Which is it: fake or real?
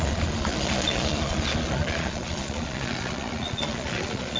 fake